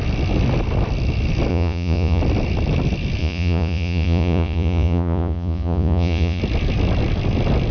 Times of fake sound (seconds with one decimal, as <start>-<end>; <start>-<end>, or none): 1.5-2.2; 3.2-6.4